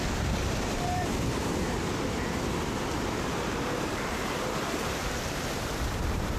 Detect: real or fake fake